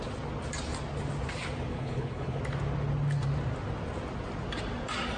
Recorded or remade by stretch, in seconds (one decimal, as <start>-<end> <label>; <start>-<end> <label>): 0.0-1.7 recorded; 1.7-2.4 remade; 2.4-5.2 recorded